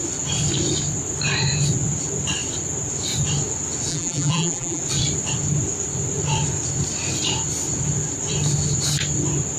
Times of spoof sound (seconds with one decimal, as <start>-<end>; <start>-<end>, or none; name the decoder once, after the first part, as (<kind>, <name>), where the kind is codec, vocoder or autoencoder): 3.9-4.8 (vocoder, BigVGAN v2)